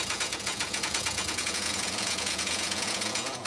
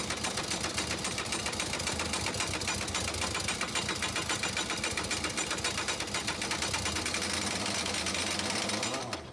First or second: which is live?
second